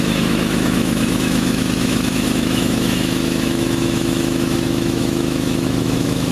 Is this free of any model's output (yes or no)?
no